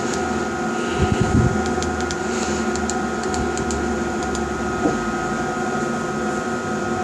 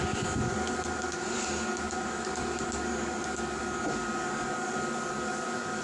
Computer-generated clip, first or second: second